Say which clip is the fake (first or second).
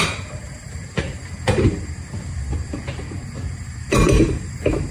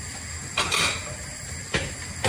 first